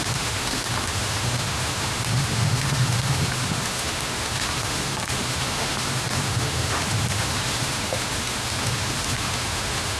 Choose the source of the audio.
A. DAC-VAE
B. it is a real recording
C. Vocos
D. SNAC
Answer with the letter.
A